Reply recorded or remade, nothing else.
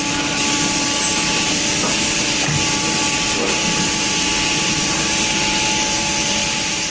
recorded